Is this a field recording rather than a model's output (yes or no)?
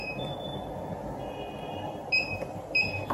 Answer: yes